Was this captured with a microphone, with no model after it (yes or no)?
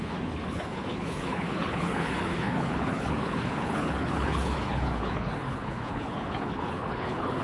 no